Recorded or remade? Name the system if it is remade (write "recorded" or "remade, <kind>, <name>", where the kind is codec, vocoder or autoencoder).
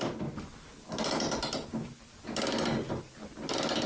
recorded